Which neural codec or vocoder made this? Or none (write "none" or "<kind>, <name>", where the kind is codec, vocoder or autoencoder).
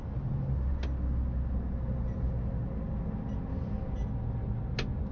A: none